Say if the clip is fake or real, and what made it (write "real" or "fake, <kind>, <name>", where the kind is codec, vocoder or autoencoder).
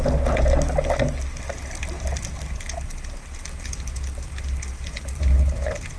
real